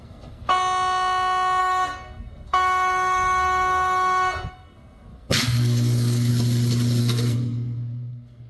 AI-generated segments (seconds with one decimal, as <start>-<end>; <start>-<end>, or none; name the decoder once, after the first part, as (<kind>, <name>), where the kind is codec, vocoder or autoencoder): 0.0-0.5 (codec, SNAC); 1.6-6.3; 7.0-8.5